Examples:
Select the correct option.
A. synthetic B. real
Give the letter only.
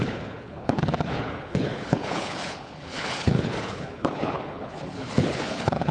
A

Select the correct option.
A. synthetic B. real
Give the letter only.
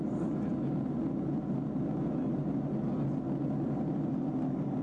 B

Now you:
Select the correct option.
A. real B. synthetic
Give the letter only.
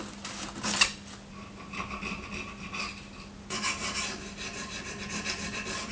A